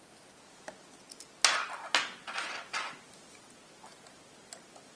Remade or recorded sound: recorded